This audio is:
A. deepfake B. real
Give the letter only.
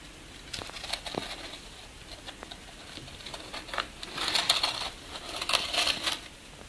B